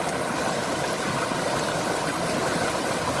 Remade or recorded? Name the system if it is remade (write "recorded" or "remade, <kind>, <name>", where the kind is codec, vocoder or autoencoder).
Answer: recorded